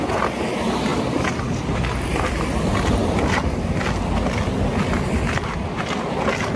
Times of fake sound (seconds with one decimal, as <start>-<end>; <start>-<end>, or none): none